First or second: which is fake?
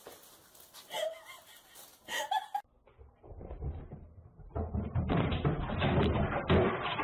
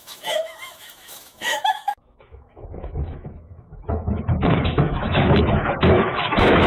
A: second